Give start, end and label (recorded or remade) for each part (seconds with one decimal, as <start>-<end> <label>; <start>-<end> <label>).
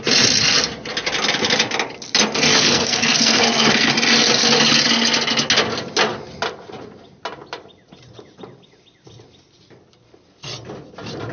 0.0-2.5 recorded; 2.5-3.9 remade; 3.9-11.3 recorded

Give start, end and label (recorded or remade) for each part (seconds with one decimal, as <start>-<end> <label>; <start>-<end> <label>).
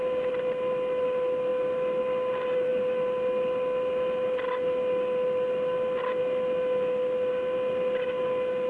0.0-8.7 recorded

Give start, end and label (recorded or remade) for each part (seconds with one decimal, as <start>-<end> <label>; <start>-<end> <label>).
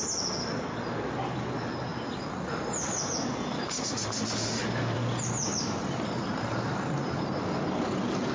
0.0-4.6 recorded; 4.6-7.2 remade; 7.2-8.3 recorded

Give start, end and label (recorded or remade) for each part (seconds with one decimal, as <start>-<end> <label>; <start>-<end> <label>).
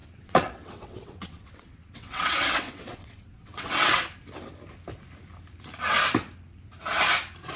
0.0-4.0 remade; 4.0-7.6 recorded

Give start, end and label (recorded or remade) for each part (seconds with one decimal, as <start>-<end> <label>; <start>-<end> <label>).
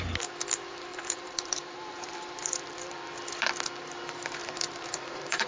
0.0-0.9 recorded; 0.9-3.1 remade; 3.1-4.4 recorded; 4.4-5.5 remade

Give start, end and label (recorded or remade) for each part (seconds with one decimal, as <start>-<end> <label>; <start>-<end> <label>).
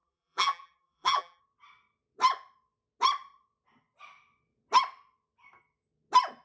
0.0-1.4 remade; 1.4-6.4 recorded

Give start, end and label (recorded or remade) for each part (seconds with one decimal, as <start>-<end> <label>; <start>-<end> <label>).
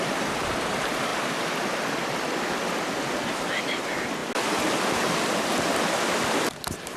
0.0-7.0 recorded